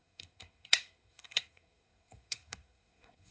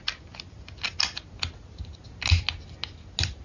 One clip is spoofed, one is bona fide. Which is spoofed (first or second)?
first